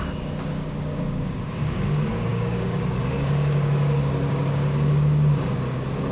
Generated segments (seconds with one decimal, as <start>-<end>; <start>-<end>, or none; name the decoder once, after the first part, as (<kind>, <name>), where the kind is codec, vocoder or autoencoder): 0.0-6.1 (codec, DAC)